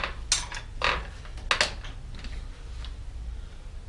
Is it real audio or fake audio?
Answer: real